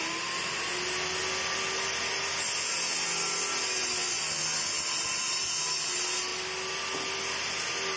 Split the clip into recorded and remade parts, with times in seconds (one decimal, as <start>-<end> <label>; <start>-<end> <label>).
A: 0.0-8.0 recorded